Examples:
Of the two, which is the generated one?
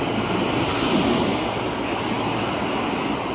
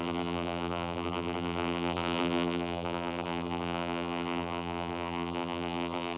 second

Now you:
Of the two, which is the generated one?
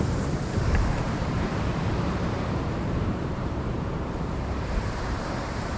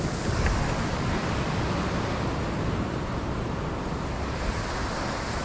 first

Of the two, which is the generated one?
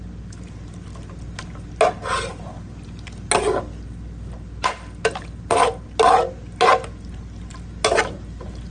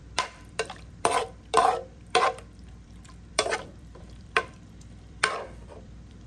second